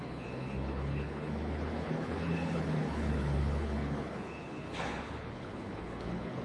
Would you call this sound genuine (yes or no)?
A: no